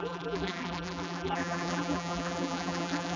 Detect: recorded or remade remade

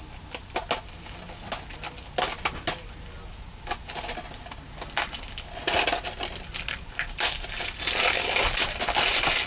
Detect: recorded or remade recorded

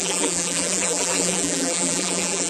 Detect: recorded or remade remade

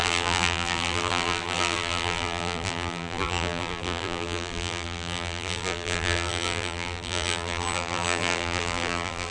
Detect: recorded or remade remade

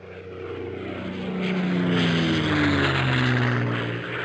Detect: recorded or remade recorded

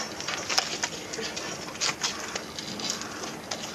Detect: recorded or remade recorded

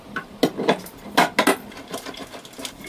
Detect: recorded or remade recorded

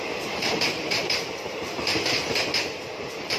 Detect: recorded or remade remade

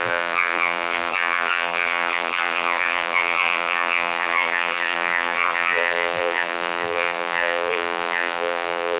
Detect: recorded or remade remade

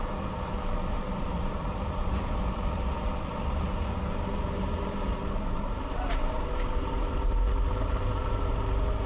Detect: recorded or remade remade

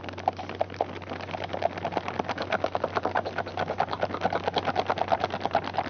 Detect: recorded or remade recorded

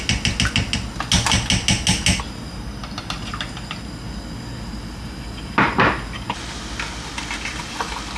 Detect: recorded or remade recorded